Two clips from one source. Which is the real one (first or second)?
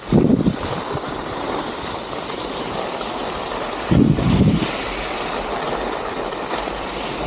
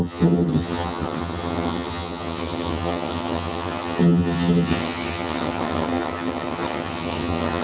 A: first